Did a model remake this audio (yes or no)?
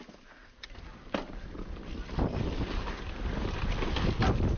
no